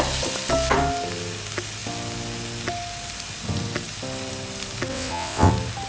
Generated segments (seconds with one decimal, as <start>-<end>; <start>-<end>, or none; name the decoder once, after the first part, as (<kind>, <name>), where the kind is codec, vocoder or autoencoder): 4.9-5.5 (vocoder, WaveNeXt)